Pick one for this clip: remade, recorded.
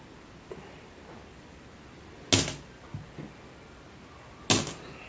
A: recorded